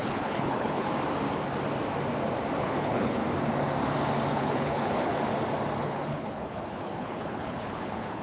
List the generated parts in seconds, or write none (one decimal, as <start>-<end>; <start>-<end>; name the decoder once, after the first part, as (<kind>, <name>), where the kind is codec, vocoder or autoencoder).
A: 0.0-0.9 (codec, HILCodec); 2.6-3.2; 4.3-5.1; 5.8-8.2